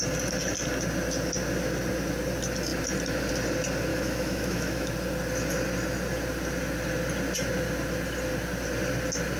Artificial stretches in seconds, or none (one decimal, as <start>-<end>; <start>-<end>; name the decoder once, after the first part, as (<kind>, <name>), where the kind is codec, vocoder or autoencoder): 3.9-4.9 (autoencoder, DAC-VAE)